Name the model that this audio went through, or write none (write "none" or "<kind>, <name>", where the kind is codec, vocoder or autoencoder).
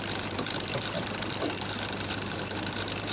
vocoder, BigVGAN v2